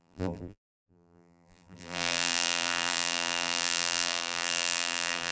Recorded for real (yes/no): no